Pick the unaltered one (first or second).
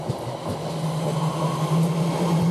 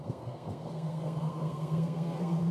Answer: first